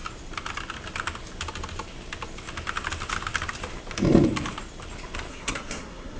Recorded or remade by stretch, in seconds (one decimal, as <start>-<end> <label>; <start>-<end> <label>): 0.0-5.3 recorded; 5.3-6.2 remade